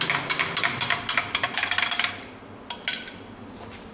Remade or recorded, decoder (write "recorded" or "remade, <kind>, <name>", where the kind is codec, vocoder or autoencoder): recorded